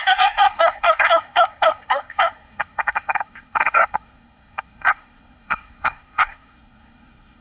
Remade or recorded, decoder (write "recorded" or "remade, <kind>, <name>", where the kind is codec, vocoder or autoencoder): remade, codec, SNAC